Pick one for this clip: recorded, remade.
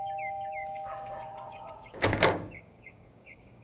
remade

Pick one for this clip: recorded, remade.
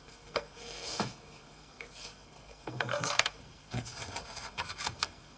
remade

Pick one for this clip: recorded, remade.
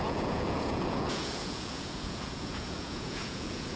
remade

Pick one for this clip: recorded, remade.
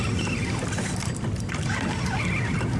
recorded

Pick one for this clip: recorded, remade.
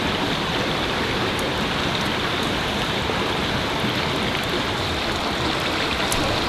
recorded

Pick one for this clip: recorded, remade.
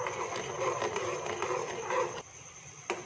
recorded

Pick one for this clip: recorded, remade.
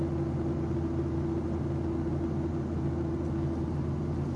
recorded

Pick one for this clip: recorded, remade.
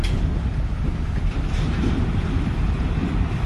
remade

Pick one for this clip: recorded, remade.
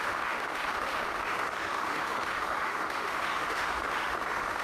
remade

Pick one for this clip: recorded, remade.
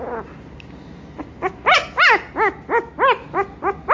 recorded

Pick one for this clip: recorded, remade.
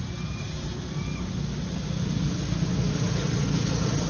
recorded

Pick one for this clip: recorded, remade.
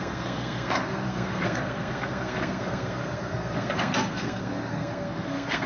remade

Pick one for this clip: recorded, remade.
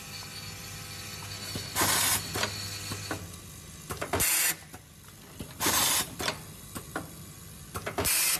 recorded